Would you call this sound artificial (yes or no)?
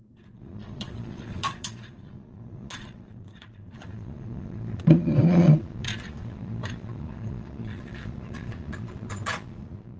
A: yes